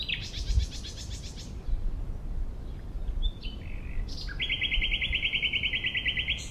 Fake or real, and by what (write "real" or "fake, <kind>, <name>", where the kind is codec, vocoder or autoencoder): real